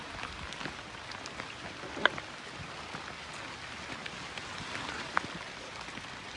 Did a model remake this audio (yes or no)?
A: no